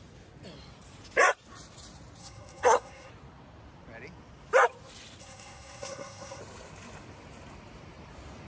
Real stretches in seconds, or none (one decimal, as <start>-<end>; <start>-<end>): 0.0-2.2; 3.1-5.2; 6.4-8.5

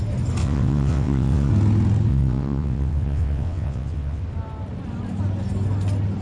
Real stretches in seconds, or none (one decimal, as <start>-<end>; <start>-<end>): 0.0-0.4; 1.5-2.1; 4.2-6.2

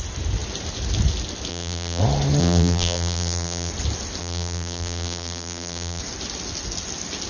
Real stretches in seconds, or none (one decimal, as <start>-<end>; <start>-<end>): 0.0-1.5; 2.0-2.4; 3.7-4.2; 6.0-7.3

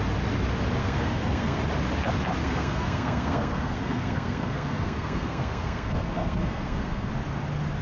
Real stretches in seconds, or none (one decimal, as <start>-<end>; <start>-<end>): 0.0-0.8; 1.6-2.4; 7.1-7.8

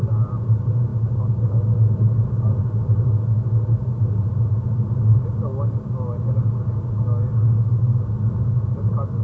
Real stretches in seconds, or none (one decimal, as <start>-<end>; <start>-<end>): 0.0-9.2

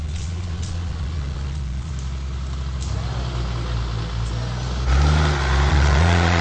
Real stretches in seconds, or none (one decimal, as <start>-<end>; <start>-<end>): 1.9-5.7

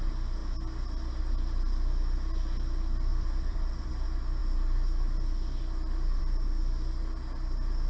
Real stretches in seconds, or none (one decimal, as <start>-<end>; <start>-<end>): 0.0-3.1; 3.9-7.9